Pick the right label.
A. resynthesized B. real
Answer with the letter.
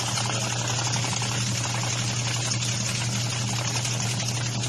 B